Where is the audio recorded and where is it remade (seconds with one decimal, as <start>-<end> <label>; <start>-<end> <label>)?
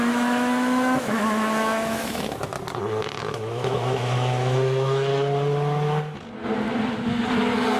0.0-2.5 remade; 2.5-3.2 recorded; 3.2-5.1 remade; 5.1-7.8 recorded